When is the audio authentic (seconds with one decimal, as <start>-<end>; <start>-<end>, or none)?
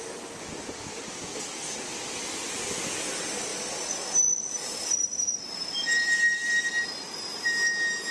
0.0-8.1